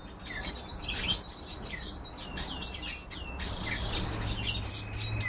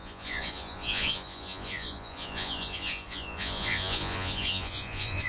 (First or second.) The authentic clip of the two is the first